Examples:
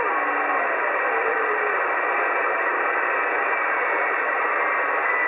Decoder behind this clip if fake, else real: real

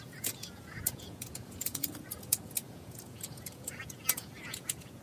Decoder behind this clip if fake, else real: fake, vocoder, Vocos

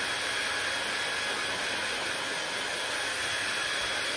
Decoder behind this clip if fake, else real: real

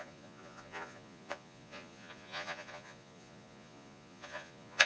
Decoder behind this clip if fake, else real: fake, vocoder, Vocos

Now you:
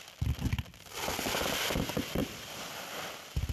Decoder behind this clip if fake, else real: real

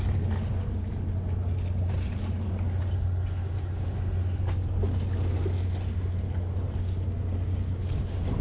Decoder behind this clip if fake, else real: real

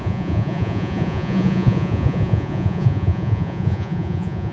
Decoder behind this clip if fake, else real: fake, vocoder, Vocos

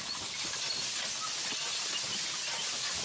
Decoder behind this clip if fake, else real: real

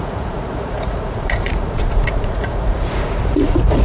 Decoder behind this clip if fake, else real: fake, vocoder, Vocos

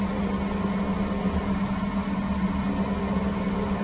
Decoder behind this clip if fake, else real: real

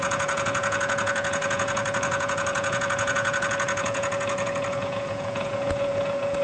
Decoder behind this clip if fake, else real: fake, vocoder, Vocos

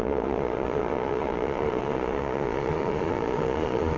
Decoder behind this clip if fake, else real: fake, vocoder, Vocos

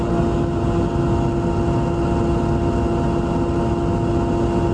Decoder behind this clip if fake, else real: real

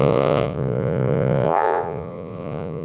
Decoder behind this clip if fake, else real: fake, vocoder, Vocos